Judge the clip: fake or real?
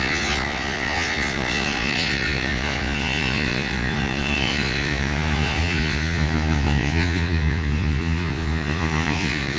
fake